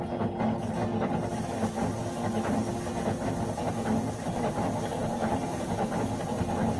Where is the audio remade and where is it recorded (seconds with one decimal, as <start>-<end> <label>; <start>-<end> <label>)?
0.0-6.8 recorded